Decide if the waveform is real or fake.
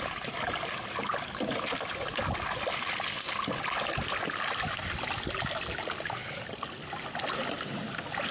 real